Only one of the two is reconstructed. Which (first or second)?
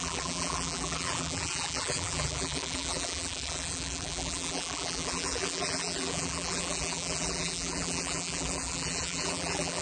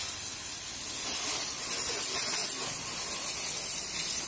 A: first